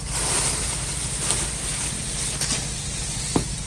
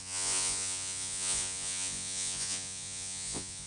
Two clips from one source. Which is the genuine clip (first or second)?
first